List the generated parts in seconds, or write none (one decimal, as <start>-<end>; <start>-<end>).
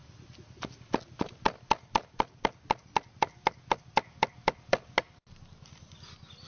none